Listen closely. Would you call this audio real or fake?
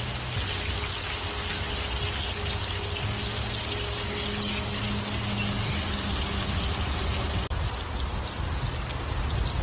real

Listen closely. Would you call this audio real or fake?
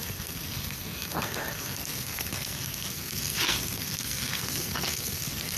fake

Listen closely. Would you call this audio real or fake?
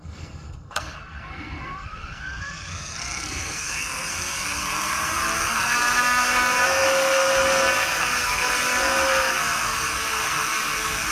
fake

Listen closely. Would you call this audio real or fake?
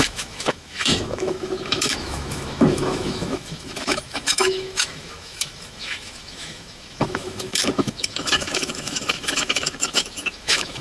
fake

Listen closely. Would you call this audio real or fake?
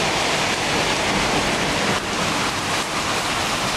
real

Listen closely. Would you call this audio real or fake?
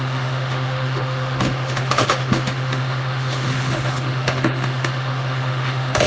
fake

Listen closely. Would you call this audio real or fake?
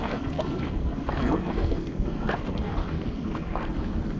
fake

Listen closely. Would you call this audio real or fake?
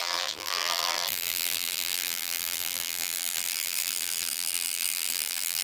fake